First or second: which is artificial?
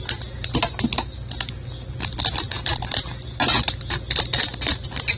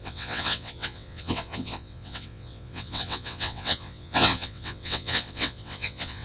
second